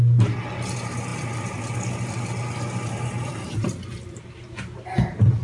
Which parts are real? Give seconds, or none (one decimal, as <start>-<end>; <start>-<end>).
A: 0.0-5.4